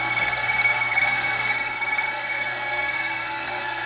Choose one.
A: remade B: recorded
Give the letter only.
A